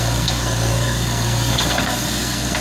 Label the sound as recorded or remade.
remade